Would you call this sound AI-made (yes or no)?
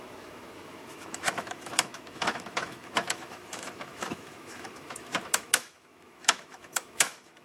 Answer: yes